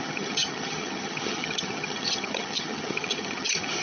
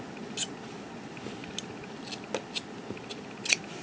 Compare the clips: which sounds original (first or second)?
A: second